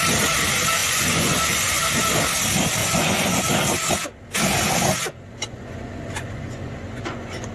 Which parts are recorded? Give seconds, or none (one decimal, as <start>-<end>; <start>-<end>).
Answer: 0.0-0.8; 1.9-2.8; 3.4-5.0